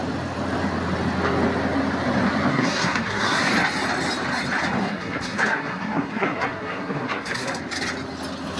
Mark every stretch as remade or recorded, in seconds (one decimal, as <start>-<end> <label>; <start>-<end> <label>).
0.0-2.5 recorded; 2.5-3.5 remade; 3.5-4.8 recorded; 4.8-7.6 remade; 7.6-8.6 recorded